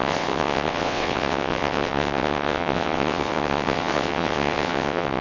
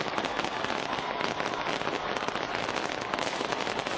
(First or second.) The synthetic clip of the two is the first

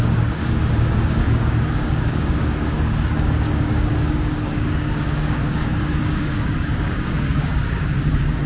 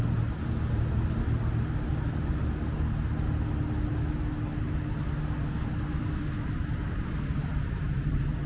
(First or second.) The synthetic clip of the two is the first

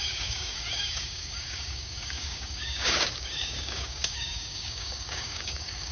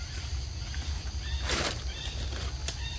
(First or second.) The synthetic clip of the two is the first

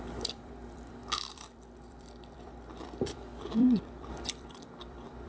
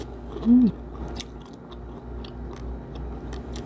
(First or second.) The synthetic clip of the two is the first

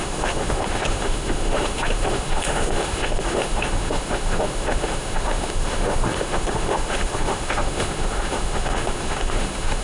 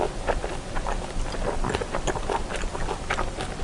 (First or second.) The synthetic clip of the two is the first